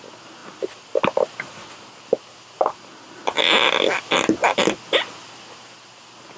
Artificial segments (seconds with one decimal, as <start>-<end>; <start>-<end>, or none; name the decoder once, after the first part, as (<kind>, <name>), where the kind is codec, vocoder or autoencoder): none